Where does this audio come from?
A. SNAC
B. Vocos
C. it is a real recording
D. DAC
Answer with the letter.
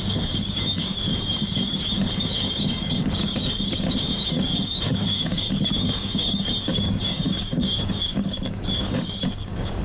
D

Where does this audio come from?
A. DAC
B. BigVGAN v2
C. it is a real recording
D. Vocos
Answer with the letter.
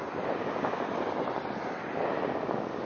C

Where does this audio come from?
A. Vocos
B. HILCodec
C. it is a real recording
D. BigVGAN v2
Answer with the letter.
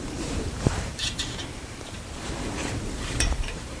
D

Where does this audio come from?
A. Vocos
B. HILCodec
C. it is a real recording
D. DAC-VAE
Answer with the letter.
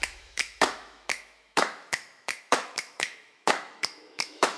D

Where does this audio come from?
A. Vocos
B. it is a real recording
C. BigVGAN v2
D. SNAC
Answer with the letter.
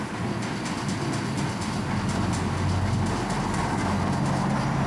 B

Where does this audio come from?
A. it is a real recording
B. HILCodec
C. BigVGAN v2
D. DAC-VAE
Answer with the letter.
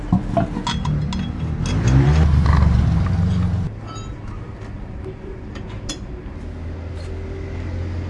A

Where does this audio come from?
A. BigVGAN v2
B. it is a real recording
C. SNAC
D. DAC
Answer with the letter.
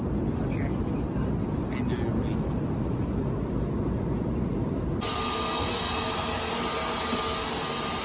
B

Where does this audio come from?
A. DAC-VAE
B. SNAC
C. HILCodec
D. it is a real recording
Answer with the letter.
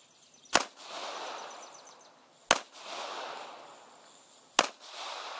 D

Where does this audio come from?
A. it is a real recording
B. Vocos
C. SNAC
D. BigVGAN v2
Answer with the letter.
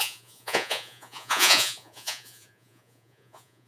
B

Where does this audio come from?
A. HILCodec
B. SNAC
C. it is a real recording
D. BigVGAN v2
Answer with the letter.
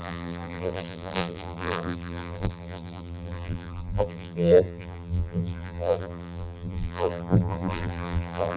D